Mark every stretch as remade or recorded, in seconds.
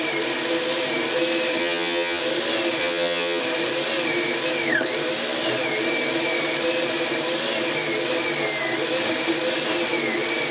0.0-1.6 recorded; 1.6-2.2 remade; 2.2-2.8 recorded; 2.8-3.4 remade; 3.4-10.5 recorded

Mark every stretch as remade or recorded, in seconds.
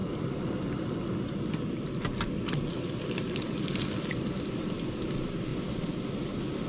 0.0-5.5 recorded; 5.5-6.7 remade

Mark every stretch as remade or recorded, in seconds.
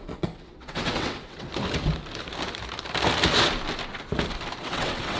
0.0-1.5 remade; 1.5-4.6 recorded; 4.6-5.2 remade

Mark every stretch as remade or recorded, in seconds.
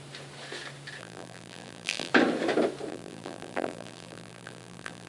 0.0-1.0 recorded; 1.0-2.1 remade; 2.1-2.9 recorded; 2.9-5.1 remade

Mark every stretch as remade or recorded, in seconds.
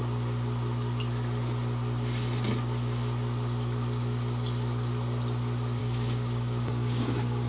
0.0-5.8 recorded; 5.8-7.5 remade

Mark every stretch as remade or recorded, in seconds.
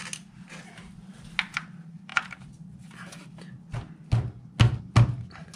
0.0-5.6 recorded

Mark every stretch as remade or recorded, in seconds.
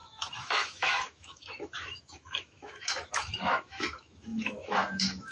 0.0-5.3 remade